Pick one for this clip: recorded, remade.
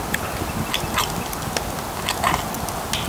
recorded